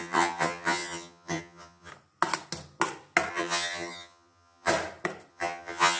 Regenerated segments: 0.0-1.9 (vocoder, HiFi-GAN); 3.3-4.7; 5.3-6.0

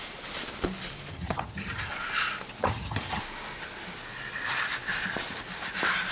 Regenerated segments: 1.1-1.9 (vocoder, HiFi-GAN); 2.6-3.2